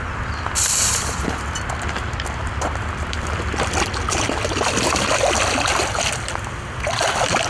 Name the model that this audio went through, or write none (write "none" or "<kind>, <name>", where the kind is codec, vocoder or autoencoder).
none